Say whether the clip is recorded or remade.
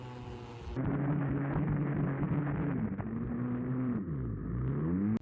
recorded